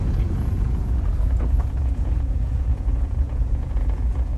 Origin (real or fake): fake